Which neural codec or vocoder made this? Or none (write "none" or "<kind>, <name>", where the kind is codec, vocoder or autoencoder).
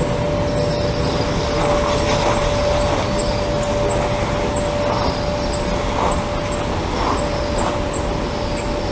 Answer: none